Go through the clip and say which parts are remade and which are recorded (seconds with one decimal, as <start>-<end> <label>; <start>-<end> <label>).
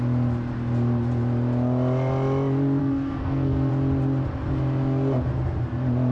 0.0-2.8 recorded; 2.8-3.7 remade; 3.7-6.1 recorded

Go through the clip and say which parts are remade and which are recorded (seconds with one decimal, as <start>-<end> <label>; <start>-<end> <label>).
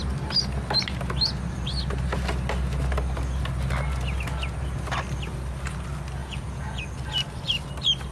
0.0-6.2 recorded; 6.2-6.8 remade; 6.8-8.1 recorded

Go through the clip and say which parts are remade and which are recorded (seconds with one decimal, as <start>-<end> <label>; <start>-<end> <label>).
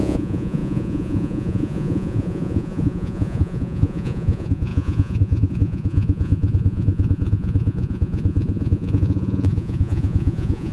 0.0-10.7 remade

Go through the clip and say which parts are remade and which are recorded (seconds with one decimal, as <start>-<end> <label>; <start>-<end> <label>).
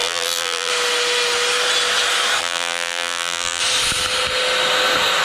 0.0-0.7 remade; 0.7-2.4 recorded; 2.4-3.6 remade; 3.6-5.2 recorded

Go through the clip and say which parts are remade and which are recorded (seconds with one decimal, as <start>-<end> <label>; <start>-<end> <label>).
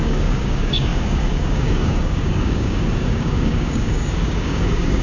0.0-5.0 remade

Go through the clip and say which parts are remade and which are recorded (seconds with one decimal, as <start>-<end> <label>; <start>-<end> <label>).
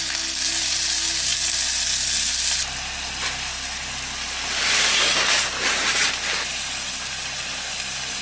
0.0-8.2 recorded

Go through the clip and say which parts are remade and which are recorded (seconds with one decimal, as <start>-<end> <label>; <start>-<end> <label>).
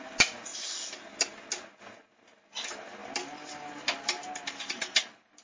0.0-5.4 recorded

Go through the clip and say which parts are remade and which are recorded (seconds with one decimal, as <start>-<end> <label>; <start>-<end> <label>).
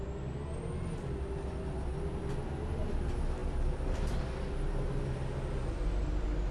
0.0-6.5 recorded